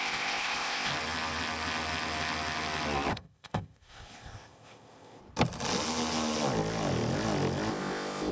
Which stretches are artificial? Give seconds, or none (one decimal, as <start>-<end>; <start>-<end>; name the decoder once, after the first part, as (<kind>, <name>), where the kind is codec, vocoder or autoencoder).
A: 0.0-0.9 (codec, ZipCodec); 3.1-5.2; 7.7-8.3